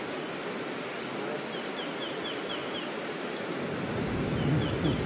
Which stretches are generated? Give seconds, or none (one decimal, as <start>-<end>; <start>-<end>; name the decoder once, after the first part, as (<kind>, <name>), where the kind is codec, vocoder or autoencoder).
none